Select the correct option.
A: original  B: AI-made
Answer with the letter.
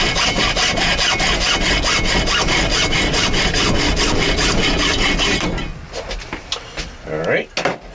A